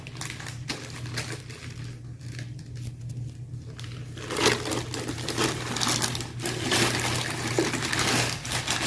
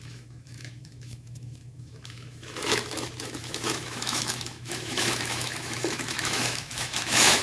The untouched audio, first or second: first